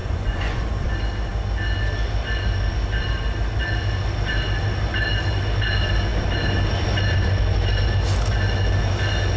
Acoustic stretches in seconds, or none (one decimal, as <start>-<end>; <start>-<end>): 0.7-9.4